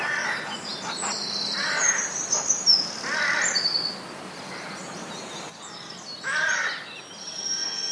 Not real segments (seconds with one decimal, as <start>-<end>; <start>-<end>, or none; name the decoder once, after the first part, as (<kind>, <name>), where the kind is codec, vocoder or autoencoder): 7.2-7.9 (codec, SNAC)